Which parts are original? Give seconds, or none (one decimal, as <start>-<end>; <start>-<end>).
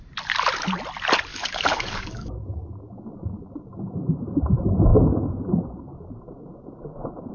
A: 0.0-1.3; 2.7-7.3